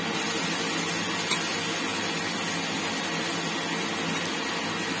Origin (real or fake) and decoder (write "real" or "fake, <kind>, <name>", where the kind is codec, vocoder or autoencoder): real